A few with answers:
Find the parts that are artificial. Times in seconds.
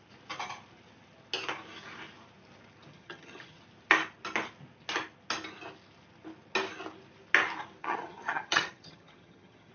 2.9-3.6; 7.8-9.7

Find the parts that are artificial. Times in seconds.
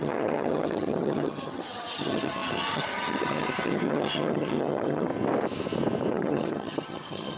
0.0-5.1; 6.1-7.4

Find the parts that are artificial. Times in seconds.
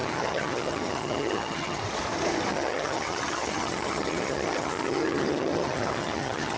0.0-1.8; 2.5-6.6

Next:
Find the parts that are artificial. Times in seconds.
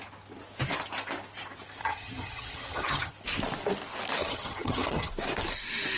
1.8-3.1; 4.2-5.1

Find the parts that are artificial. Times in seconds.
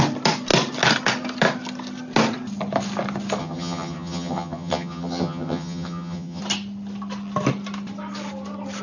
3.4-6.4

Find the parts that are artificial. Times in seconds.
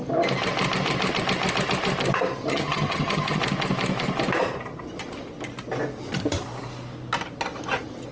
2.5-3.4